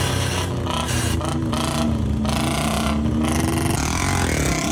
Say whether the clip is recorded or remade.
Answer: recorded